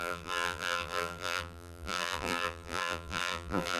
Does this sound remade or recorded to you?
remade